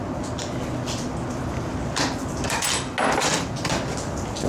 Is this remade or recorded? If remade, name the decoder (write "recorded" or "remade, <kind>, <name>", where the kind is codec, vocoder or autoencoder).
recorded